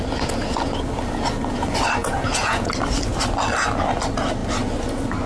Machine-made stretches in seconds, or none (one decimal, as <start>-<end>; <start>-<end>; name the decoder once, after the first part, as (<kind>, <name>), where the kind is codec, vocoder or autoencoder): 2.0-2.7 (vocoder, Vocos)